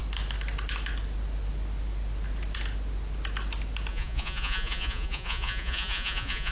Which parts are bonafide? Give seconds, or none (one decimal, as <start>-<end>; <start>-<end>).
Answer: 0.0-3.9